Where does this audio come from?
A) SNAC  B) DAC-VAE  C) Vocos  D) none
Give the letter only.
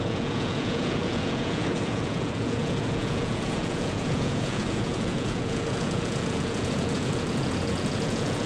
C